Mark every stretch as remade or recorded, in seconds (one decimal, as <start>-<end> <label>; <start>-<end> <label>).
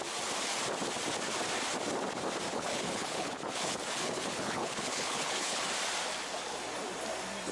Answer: 0.0-2.5 recorded; 2.5-5.6 remade; 5.6-7.5 recorded